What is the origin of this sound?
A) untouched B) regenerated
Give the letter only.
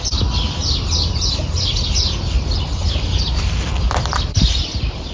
A